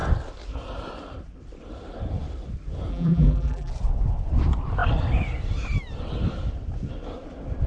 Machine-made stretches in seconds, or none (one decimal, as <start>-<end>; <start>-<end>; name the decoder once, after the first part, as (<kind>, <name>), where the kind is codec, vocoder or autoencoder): 2.9-3.7 (vocoder, BigVGAN v2)